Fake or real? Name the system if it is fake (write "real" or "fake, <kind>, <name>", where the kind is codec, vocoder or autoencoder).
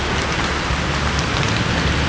real